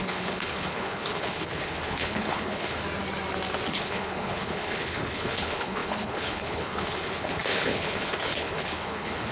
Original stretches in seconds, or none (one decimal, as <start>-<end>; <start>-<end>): 2.8-3.7